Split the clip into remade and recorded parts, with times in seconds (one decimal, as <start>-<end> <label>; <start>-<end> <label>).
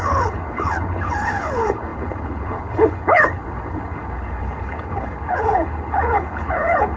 0.0-7.0 remade